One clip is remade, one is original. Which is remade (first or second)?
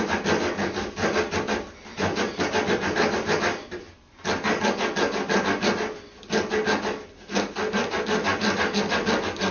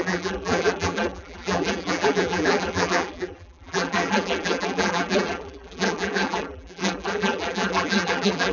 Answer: second